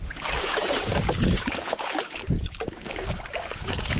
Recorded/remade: remade